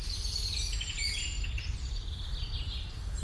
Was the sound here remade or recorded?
recorded